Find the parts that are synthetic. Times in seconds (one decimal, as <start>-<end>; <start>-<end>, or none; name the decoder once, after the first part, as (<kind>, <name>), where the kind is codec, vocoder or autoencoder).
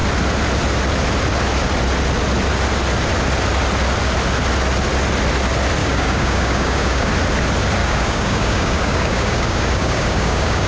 5.8-7.1 (codec, DAC); 7.8-10.7